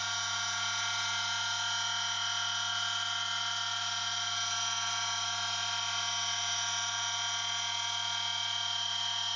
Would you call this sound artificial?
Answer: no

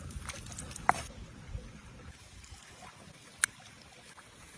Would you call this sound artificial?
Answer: no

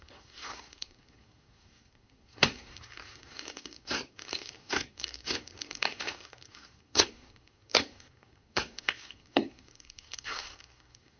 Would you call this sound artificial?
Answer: yes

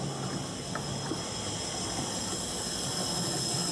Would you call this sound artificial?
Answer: no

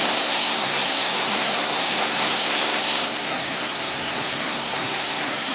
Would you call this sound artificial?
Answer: yes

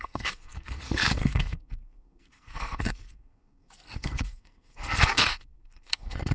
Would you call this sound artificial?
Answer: yes